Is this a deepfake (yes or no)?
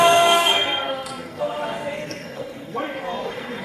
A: yes